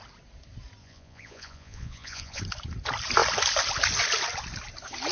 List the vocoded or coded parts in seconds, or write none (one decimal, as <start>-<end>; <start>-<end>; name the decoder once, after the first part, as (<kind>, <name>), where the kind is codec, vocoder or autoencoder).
0.8-2.4 (vocoder, Vocos)